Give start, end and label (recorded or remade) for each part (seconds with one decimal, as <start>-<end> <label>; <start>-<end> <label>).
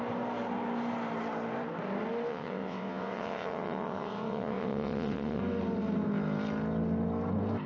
0.0-2.3 recorded; 2.3-5.4 remade; 5.4-7.7 recorded